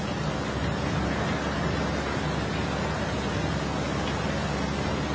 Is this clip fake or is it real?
real